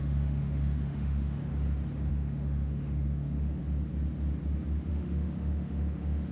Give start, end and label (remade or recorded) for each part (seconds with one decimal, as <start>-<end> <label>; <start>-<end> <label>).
0.0-1.5 remade; 1.5-2.1 recorded; 2.1-3.6 remade; 3.6-4.9 recorded; 4.9-6.3 remade